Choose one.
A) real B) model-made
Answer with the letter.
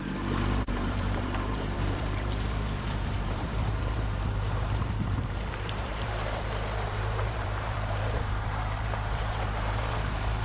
B